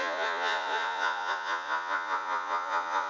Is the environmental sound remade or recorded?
remade